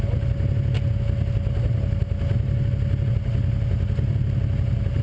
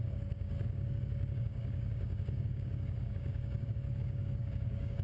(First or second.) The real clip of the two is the first